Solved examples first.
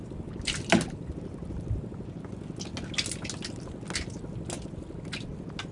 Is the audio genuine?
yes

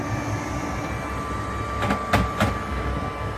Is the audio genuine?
yes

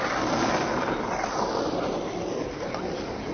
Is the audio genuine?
yes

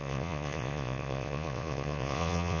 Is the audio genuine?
no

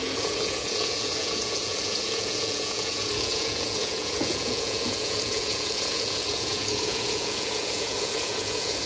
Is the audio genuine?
no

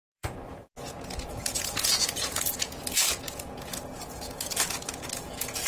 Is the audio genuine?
no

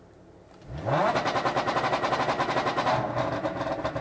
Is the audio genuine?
yes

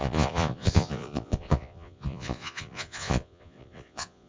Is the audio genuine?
no